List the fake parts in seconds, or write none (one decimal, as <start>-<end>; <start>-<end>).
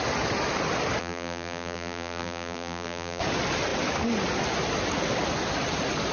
1.0-3.2